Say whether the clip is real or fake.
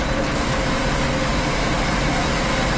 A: real